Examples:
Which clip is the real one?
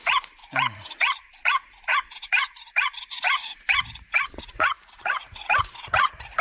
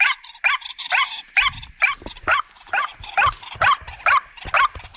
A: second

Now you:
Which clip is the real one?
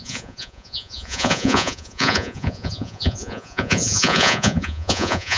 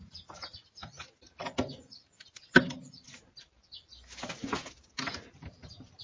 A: second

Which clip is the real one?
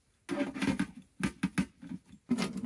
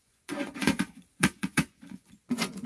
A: first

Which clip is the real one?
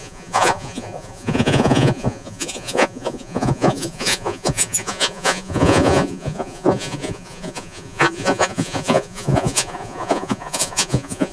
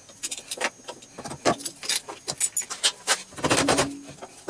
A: second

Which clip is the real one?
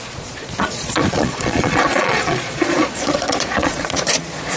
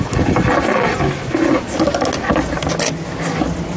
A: second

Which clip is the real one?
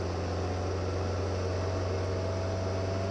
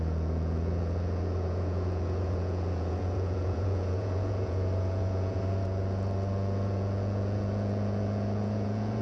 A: first